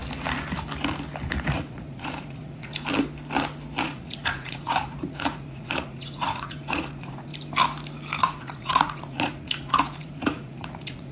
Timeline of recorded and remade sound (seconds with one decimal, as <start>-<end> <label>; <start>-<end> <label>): 0.0-1.3 recorded; 1.3-2.7 remade; 2.7-3.8 recorded; 3.8-7.3 remade; 7.3-8.2 recorded; 8.2-11.1 remade